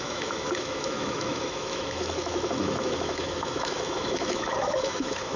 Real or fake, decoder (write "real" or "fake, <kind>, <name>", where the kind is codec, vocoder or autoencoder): fake, autoencoder, DAC-VAE